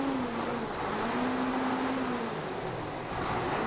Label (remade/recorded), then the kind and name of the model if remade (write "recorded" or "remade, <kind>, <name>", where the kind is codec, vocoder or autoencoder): recorded